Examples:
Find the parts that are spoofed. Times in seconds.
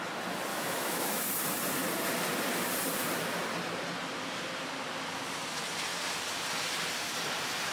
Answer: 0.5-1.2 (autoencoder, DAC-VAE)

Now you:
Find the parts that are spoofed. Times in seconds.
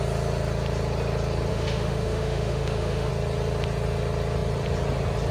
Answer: 1.5-3.1 (autoencoder, DAC-VAE)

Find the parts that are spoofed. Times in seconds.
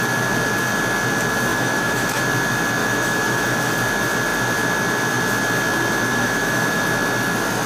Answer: 1.5-2.2 (autoencoder, DAC-VAE); 2.8-3.7; 6.1-6.8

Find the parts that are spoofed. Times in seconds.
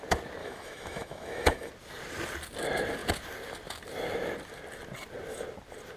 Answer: 0.4-1.7 (autoencoder, DAC-VAE)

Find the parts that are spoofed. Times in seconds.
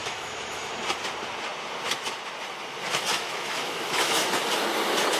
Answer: 0.0-0.7 (autoencoder, DAC-VAE); 3.1-4.4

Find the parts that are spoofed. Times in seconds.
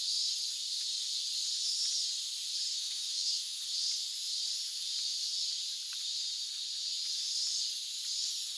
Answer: 2.7-3.6 (autoencoder, DAC-VAE)